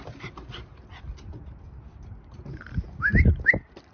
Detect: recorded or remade recorded